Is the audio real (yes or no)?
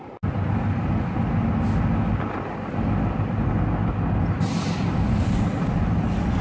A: yes